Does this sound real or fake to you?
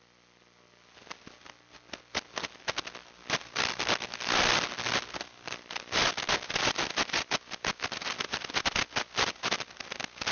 real